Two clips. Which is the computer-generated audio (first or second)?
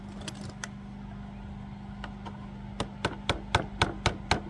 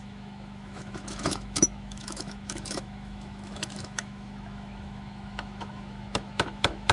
second